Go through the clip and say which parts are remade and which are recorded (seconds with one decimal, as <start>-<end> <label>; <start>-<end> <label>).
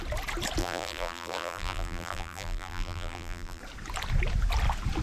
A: 0.0-0.6 recorded; 0.6-3.6 remade; 3.6-5.0 recorded